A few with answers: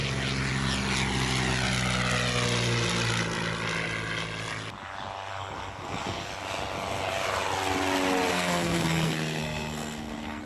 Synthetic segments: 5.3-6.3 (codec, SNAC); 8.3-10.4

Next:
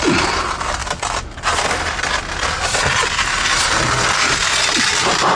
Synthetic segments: none

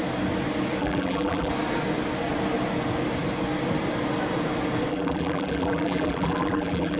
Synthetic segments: 0.8-1.5 (vocoder, BigVGAN v2); 4.9-7.0

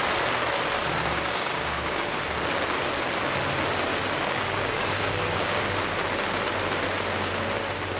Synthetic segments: 0.8-2.2 (codec, DAC); 3.9-5.6

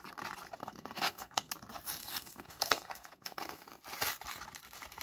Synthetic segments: 0.6-1.5 (codec, SNAC); 2.0-3.8

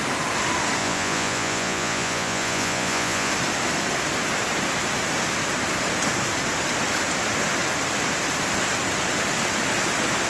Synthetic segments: 0.8-3.3 (vocoder, Vocos)